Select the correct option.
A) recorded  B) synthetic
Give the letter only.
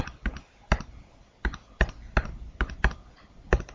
A